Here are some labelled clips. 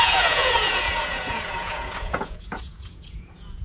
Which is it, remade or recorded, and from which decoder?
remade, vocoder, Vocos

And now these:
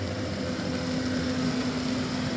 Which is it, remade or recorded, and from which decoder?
recorded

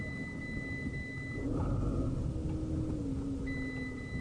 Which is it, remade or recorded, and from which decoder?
recorded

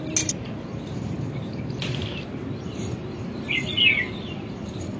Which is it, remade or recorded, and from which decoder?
recorded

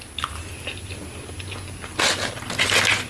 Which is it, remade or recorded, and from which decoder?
recorded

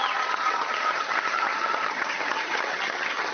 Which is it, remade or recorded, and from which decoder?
remade, vocoder, HiFi-GAN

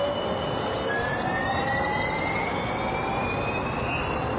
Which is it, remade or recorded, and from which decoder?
recorded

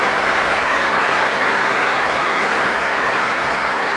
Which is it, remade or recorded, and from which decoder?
remade, codec, SNAC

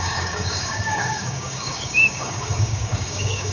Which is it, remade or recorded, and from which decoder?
remade, codec, DAC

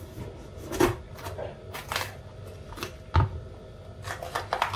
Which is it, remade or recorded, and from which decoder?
recorded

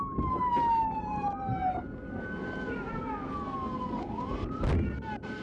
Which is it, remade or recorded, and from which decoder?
recorded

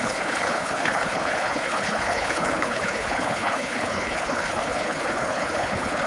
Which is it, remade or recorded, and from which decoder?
remade, codec, HILCodec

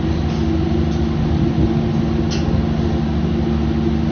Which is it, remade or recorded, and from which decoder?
recorded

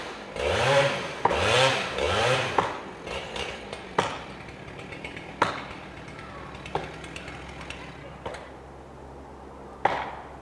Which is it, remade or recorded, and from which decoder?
recorded